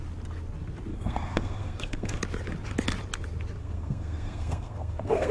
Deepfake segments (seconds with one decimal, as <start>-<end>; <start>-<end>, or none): 0.9-2.2; 3.6-5.3